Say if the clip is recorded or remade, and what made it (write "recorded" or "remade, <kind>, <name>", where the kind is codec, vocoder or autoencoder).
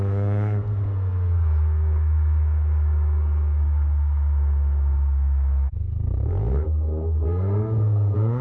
remade, codec, SNAC